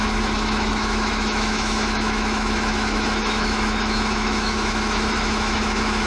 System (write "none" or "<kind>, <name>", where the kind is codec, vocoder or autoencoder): autoencoder, DAC-VAE